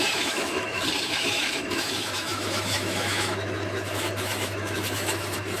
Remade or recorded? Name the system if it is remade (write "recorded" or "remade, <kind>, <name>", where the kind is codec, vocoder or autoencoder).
remade, autoencoder, DAC-VAE